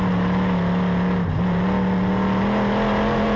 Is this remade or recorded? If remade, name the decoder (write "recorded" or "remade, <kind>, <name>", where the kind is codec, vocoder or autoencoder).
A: recorded